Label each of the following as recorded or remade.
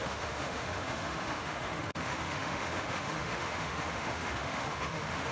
remade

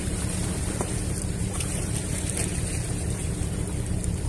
remade